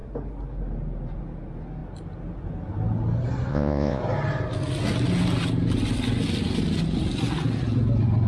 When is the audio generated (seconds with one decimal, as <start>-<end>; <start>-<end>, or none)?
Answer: 3.5-4.0